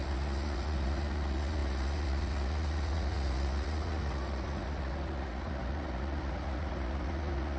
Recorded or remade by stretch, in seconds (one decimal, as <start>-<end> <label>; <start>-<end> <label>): 0.0-7.6 remade